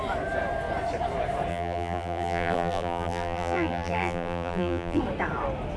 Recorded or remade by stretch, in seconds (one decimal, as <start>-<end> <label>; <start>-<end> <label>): 0.0-1.5 recorded; 1.5-5.0 remade; 5.0-5.8 recorded

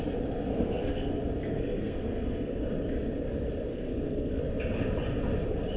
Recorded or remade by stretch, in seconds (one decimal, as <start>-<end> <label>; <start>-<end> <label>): 0.0-0.5 recorded; 0.5-1.1 remade; 1.1-1.5 recorded; 1.5-2.6 remade; 2.6-3.7 recorded; 3.7-4.4 remade; 4.4-5.8 recorded

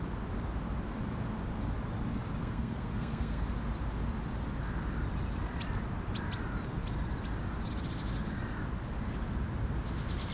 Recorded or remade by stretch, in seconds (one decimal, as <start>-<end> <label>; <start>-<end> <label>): 0.0-2.4 recorded; 2.4-3.4 remade; 3.4-10.3 recorded

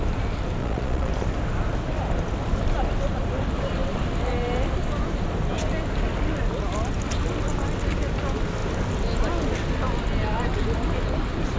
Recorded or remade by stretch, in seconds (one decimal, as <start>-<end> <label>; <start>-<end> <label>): 0.0-0.6 recorded; 0.6-1.1 remade; 1.1-11.6 recorded

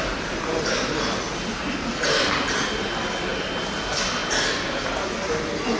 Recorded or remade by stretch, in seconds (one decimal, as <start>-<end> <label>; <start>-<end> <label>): 0.0-5.8 recorded

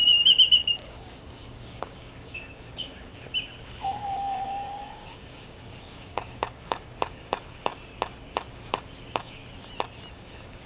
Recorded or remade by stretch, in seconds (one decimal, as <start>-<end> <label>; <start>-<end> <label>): 0.0-3.1 remade; 3.1-3.6 recorded; 3.6-7.7 remade; 7.7-8.5 recorded; 8.5-9.4 remade; 9.4-10.1 recorded; 10.1-10.7 remade

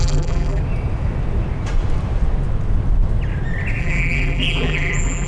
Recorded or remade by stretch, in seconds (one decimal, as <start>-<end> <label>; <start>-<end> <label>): 0.0-0.6 remade; 0.6-3.8 recorded; 3.8-5.3 remade

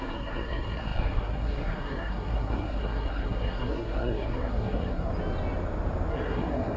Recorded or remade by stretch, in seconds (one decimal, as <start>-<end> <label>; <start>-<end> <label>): 0.0-5.1 remade; 5.1-6.1 recorded; 6.1-6.8 remade